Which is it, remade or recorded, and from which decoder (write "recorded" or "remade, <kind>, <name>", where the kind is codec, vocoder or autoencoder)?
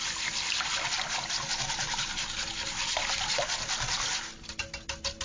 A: recorded